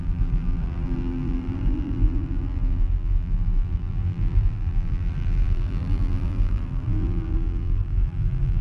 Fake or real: fake